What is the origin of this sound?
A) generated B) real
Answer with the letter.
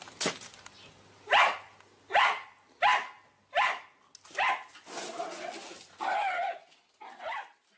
B